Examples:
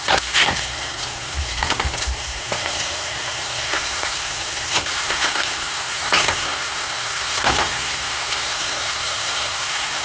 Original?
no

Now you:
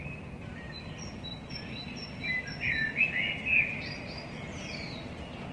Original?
yes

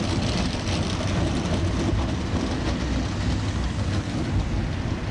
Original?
yes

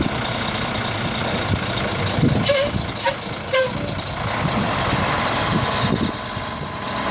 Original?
yes